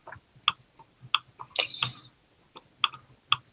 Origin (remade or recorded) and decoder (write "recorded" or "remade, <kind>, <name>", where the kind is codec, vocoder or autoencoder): recorded